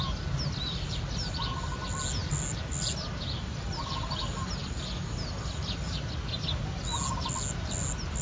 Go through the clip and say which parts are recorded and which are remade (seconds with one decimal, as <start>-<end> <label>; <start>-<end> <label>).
0.0-8.2 recorded

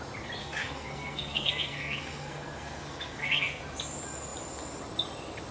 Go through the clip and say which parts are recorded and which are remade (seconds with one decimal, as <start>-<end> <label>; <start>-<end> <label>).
0.0-0.4 recorded; 0.4-3.6 remade; 3.6-5.5 recorded

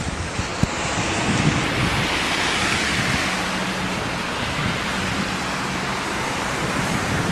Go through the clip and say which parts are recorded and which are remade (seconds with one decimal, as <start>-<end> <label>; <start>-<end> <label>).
0.0-0.5 remade; 0.5-4.9 recorded; 4.9-7.3 remade

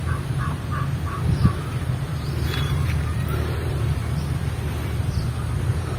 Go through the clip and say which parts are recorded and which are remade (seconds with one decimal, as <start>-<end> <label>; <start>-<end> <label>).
0.0-4.0 remade; 4.0-5.5 recorded; 5.5-6.0 remade

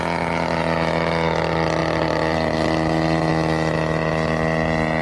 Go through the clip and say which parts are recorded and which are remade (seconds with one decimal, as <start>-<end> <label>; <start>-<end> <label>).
0.0-5.0 recorded

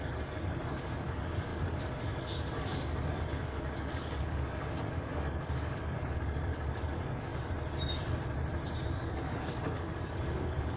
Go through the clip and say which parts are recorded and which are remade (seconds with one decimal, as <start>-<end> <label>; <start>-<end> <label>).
0.0-7.3 remade; 7.3-8.9 recorded; 8.9-10.8 remade

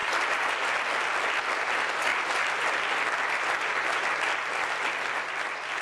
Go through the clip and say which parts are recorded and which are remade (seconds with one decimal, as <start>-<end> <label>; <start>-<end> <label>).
0.0-5.8 recorded